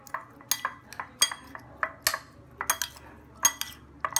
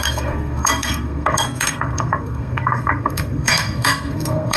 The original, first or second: first